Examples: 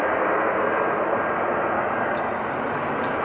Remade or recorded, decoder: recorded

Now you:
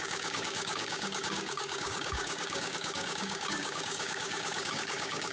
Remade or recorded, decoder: remade, codec, DAC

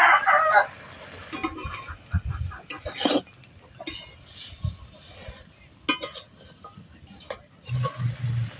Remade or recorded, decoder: recorded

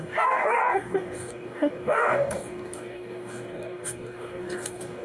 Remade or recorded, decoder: remade, codec, DAC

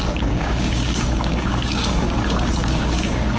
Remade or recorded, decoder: remade, codec, DAC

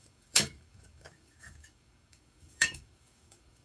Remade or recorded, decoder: remade, codec, DAC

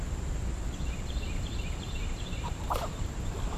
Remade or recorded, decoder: recorded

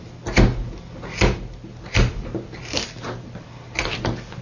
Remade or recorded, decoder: recorded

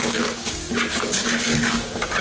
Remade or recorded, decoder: remade, codec, DAC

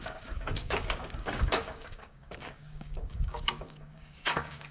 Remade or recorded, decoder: remade, codec, DAC